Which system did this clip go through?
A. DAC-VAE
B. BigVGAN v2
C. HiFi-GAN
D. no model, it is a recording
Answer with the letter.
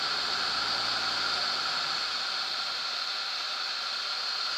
D